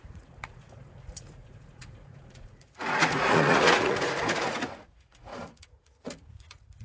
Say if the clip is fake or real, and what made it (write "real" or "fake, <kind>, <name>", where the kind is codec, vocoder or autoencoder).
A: fake, vocoder, Vocos